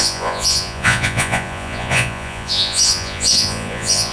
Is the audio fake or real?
fake